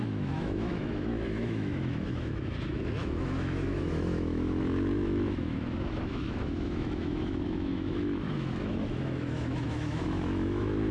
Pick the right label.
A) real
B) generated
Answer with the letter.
B